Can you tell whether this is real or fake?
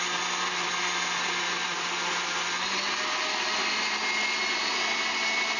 real